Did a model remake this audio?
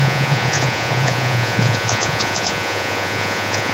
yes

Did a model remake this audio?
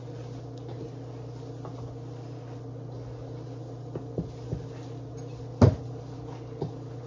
no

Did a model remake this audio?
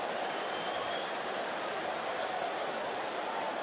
yes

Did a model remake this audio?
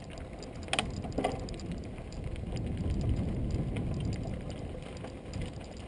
no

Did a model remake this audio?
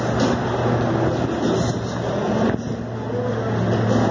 no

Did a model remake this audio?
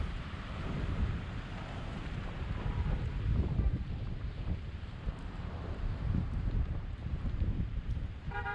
yes